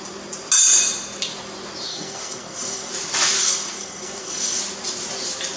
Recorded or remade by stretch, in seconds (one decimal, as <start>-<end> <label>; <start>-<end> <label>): 0.0-1.9 recorded; 1.9-2.9 remade; 2.9-3.4 recorded; 3.4-4.6 remade; 4.6-5.6 recorded